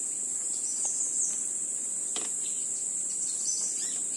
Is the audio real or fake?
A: real